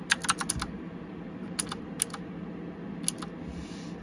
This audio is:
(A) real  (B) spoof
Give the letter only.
A